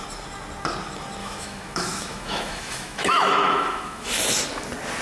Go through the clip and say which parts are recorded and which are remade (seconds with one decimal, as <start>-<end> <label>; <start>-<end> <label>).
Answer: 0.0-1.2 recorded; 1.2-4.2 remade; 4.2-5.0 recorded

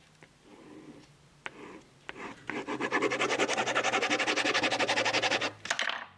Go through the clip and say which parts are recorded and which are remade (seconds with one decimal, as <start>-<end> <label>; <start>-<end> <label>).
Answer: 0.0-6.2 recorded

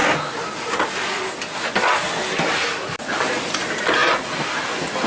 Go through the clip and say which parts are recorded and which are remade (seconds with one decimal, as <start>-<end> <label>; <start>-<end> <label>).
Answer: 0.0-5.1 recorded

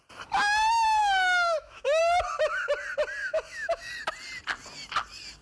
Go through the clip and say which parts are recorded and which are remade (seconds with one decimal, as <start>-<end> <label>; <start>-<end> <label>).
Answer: 0.0-1.0 recorded; 1.0-2.0 remade; 2.0-3.2 recorded; 3.2-3.9 remade; 3.9-5.4 recorded